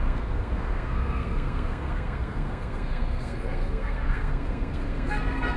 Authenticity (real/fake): fake